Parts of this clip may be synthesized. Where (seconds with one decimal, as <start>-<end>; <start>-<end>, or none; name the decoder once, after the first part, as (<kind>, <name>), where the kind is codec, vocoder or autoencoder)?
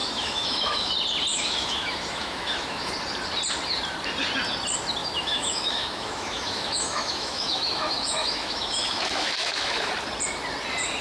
0.0-0.9 (autoencoder, DAC-VAE); 1.3-2.9; 5.0-9.9